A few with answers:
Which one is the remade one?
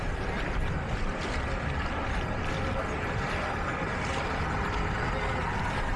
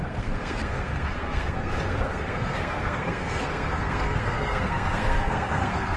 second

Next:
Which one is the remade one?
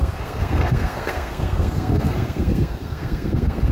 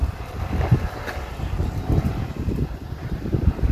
first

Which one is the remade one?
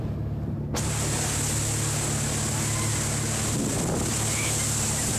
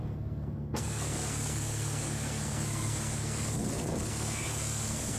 second